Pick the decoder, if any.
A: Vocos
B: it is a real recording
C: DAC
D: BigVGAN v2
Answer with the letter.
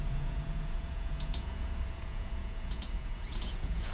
A